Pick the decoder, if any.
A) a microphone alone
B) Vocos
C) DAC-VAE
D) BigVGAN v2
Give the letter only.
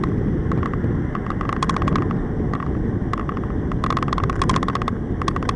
A